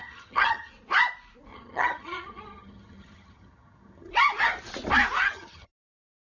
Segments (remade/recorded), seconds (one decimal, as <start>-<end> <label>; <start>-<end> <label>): 0.0-0.7 remade; 0.7-1.5 recorded; 1.5-4.1 remade; 4.1-5.2 recorded; 5.2-5.7 remade; 5.7-6.4 recorded